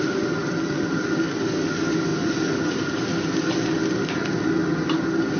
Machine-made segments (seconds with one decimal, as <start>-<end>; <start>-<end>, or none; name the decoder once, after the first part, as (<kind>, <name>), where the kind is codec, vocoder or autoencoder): none